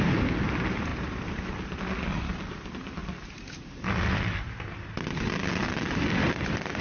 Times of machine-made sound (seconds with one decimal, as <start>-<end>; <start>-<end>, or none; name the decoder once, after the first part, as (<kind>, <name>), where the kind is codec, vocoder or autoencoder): 0.9-1.4 (vocoder, BigVGAN v2)